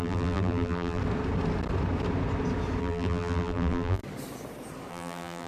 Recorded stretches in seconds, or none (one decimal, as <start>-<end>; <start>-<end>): 1.0-2.8; 4.0-4.9